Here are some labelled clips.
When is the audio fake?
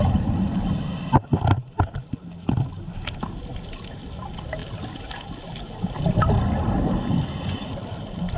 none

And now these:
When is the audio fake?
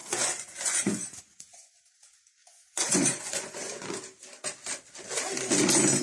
0.0-1.8 (vocoder, Vocos); 2.4-3.8